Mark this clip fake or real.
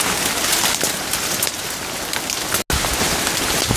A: real